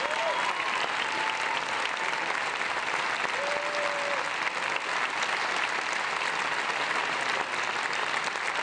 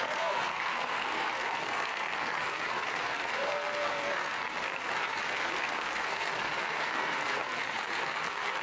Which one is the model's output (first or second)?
second